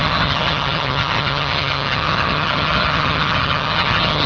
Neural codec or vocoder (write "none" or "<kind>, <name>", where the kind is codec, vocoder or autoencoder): vocoder, HiFi-GAN